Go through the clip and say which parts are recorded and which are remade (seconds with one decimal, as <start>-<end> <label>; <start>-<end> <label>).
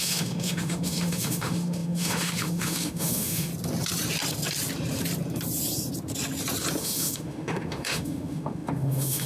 0.0-3.5 remade; 3.5-6.8 recorded; 6.8-9.3 remade